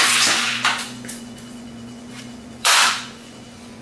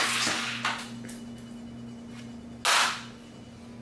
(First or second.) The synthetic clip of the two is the first